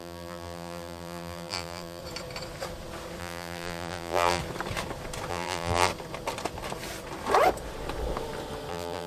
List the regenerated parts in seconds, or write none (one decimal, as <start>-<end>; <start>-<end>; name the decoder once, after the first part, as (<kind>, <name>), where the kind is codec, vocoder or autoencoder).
0.0-2.0 (vocoder, BigVGAN v2); 3.2-4.4; 5.3-5.9; 8.7-9.1